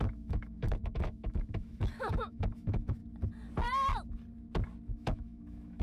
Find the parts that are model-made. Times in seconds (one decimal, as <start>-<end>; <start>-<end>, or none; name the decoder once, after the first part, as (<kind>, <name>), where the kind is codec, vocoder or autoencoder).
0.0-3.0 (autoencoder, DAC-VAE); 4.9-5.8